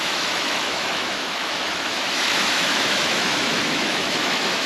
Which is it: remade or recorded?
remade